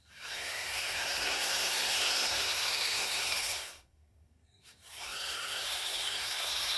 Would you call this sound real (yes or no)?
no